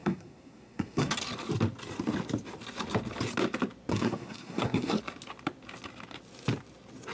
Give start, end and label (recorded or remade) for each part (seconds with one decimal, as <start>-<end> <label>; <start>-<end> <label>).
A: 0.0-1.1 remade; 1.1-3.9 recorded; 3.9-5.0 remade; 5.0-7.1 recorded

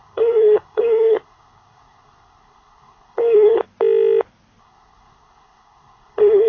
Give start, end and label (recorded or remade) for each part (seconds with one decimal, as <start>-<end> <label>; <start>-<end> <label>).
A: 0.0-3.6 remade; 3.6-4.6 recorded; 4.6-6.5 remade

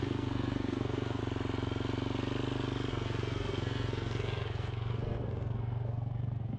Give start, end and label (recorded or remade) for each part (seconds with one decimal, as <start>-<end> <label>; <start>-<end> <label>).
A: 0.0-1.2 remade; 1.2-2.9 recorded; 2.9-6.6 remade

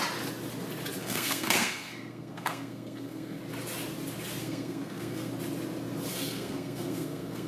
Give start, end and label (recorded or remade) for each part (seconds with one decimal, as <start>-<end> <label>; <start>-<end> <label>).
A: 0.0-1.0 recorded; 1.0-3.4 remade; 3.4-4.4 recorded; 4.4-5.3 remade; 5.3-6.1 recorded; 6.1-7.5 remade

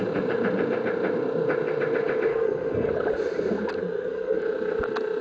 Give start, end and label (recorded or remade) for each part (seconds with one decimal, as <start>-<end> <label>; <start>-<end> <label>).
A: 0.0-2.3 recorded; 2.3-2.9 remade; 2.9-3.8 recorded; 3.8-4.4 remade; 4.4-5.2 recorded

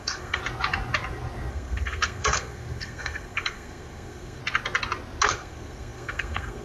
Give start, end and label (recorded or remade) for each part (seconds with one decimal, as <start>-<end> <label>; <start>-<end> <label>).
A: 0.0-0.4 remade; 0.4-1.5 recorded; 1.5-4.4 remade; 4.4-5.3 recorded; 5.3-6.6 remade

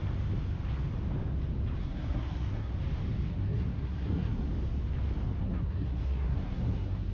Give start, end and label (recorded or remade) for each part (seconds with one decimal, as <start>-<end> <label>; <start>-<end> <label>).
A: 0.0-1.8 recorded; 1.8-2.7 remade; 2.7-3.3 recorded; 3.3-4.5 remade; 4.5-5.4 recorded; 5.4-7.1 remade

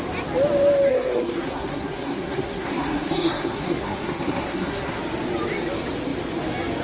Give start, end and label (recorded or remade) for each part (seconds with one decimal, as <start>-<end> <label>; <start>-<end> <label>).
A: 0.0-0.9 recorded; 0.9-5.0 remade; 5.0-6.8 recorded